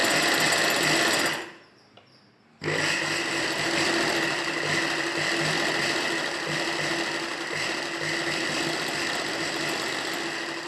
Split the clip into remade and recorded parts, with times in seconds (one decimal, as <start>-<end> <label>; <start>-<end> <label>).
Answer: 0.0-10.7 recorded